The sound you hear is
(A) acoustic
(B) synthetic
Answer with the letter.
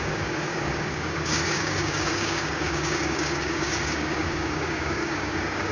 B